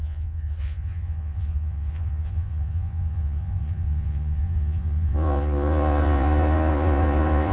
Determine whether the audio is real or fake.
fake